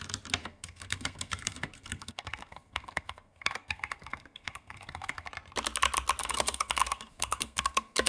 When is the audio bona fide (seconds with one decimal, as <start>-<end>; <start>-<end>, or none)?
0.0-0.4; 5.3-6.2